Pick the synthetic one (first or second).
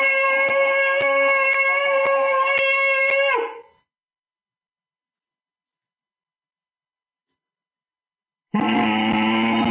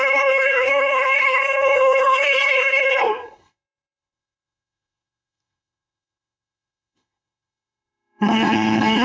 second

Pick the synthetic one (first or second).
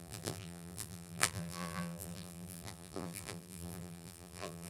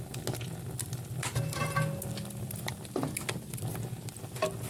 first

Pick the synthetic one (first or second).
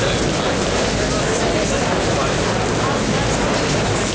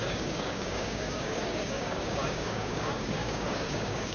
second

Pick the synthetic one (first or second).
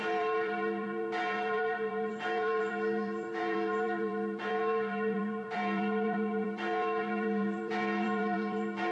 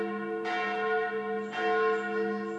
first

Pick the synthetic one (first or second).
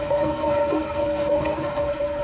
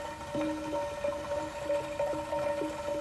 first